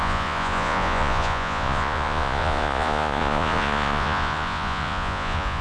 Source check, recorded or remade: remade